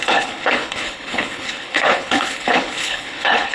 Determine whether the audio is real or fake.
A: fake